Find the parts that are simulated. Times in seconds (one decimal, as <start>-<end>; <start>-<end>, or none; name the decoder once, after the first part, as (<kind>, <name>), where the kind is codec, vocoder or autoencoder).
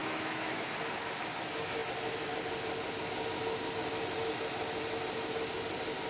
0.0-0.6 (autoencoder, DAC-VAE)